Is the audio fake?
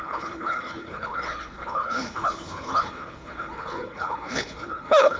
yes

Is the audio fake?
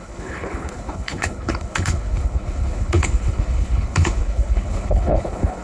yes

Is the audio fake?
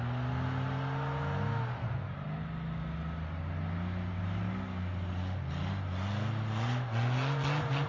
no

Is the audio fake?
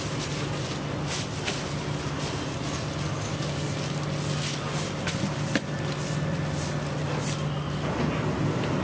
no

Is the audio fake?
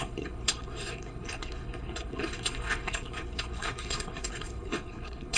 yes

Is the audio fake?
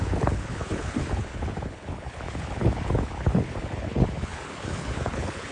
yes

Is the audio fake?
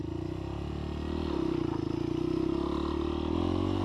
no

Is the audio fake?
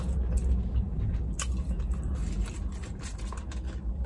no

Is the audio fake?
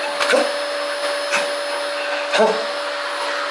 no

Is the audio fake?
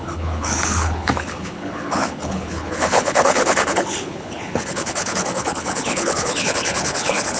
yes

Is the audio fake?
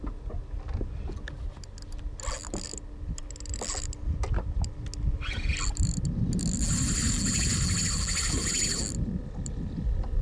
no